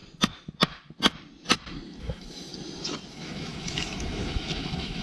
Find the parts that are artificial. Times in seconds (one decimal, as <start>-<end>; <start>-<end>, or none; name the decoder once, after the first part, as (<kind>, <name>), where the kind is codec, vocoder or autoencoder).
2.0-2.5 (autoencoder, DAC-VAE); 3.1-5.0